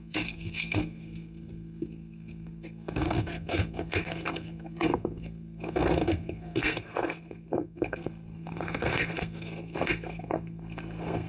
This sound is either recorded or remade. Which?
remade